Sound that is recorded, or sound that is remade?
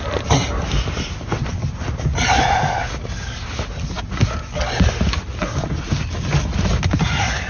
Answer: recorded